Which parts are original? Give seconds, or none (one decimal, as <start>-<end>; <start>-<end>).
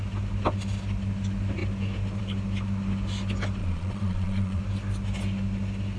0.0-3.6; 4.6-6.0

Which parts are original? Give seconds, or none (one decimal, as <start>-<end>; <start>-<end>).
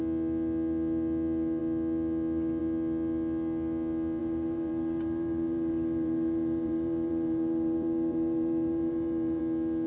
0.0-4.2; 9.4-9.9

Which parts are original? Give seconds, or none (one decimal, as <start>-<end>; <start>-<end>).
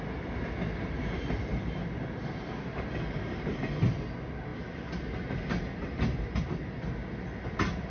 0.0-7.9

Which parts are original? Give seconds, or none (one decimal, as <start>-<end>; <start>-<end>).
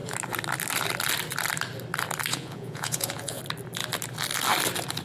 0.0-2.3; 3.4-5.0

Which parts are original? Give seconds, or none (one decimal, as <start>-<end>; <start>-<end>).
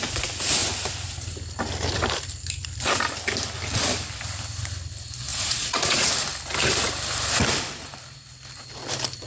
0.0-5.3; 6.1-9.3